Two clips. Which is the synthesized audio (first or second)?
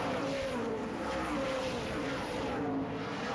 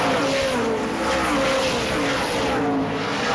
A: first